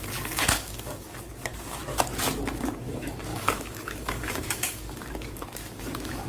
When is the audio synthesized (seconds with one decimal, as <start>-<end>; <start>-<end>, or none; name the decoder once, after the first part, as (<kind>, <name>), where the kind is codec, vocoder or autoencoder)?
0.0-1.8 (codec, DAC); 2.6-6.3